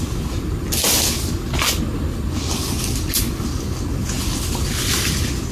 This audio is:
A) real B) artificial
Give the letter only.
A